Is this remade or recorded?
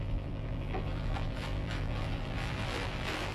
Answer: remade